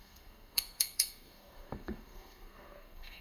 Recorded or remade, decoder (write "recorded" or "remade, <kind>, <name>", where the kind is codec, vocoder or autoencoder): remade, codec, SNAC